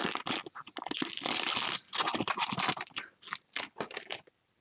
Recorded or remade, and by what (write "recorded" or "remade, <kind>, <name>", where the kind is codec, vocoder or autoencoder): recorded